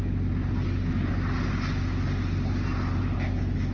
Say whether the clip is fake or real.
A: real